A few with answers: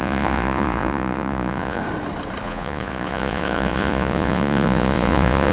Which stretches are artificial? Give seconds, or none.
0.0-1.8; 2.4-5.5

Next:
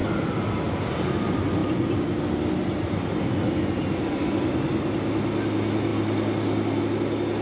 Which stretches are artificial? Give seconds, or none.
none

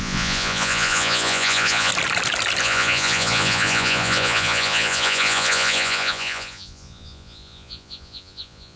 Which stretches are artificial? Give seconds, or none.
0.0-1.9; 2.6-8.8

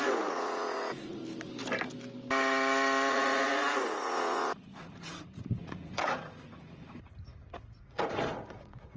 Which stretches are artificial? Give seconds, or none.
0.0-1.2; 3.1-9.0

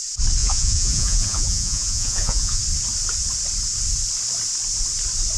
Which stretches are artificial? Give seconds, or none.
0.4-2.6

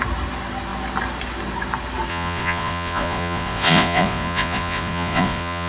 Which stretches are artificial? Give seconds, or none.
2.1-5.7

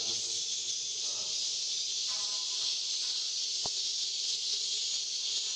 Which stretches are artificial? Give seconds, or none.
none

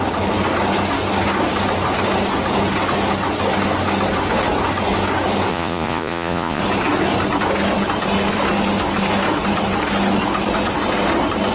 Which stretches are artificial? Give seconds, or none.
5.5-6.6